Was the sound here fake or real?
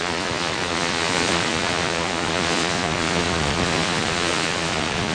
fake